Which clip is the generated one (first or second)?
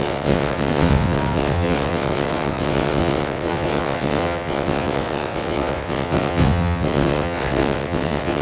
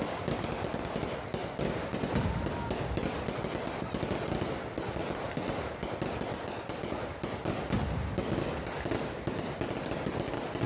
first